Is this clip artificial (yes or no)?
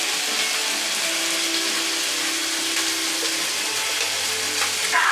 no